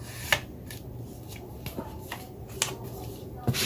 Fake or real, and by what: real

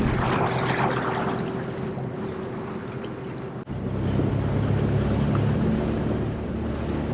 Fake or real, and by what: real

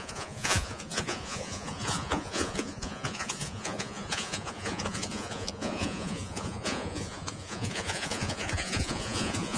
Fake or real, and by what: fake, vocoder, Vocos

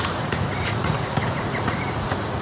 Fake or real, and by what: fake, vocoder, Vocos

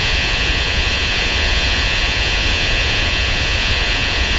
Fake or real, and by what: fake, vocoder, Vocos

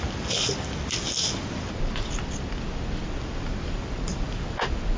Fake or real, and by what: real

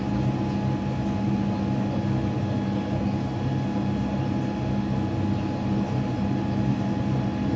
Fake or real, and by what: real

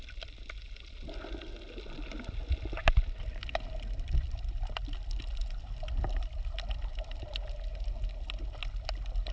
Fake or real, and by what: real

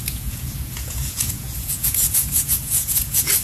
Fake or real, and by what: fake, vocoder, Vocos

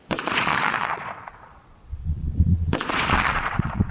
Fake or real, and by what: fake, vocoder, Vocos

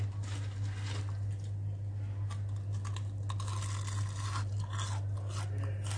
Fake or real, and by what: real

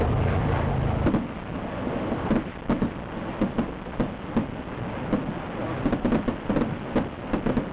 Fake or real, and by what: real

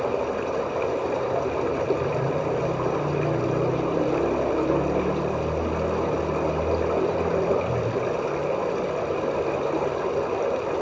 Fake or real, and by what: real